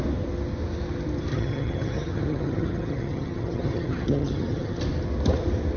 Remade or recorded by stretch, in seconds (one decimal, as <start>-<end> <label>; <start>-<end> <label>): 0.0-1.3 recorded; 1.3-4.8 remade; 4.8-5.8 recorded